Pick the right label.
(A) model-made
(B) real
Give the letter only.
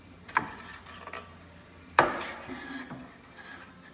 B